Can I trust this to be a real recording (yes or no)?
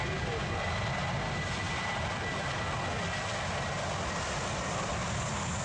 yes